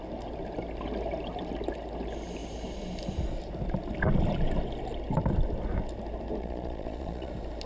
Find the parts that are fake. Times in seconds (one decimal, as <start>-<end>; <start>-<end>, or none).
6.4-7.3